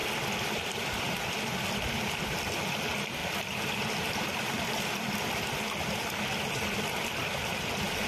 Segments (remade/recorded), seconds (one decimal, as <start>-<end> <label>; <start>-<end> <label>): 0.0-1.0 remade; 1.0-8.1 recorded